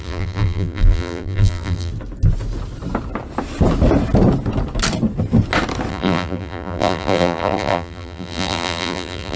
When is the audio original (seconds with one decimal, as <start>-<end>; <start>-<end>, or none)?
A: 1.9-5.9